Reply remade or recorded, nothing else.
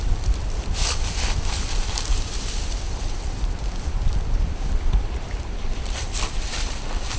remade